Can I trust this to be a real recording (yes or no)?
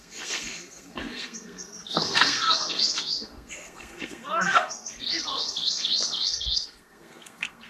no